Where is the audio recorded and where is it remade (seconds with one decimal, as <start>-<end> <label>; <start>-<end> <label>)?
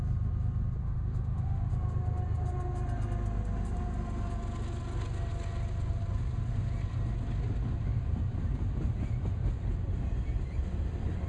0.0-0.8 recorded; 0.8-1.7 remade; 1.7-11.3 recorded